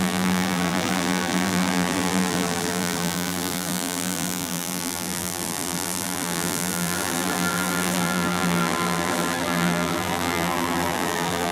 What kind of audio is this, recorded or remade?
remade